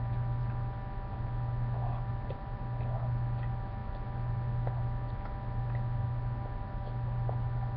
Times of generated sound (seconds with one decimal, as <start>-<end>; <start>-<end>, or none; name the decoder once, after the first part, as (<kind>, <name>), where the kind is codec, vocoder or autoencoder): 2.1-2.6 (vocoder, BigVGAN v2)